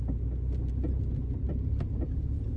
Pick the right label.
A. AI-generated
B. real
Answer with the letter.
B